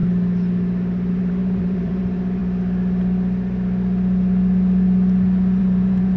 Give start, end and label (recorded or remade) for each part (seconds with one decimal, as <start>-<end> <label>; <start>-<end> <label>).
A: 0.0-1.1 recorded; 1.1-2.4 remade; 2.4-5.6 recorded; 5.6-6.2 remade